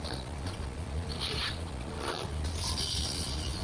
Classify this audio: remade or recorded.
remade